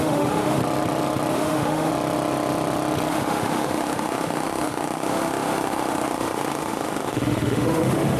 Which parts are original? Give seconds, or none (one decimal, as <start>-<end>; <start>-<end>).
0.6-1.3; 1.9-3.1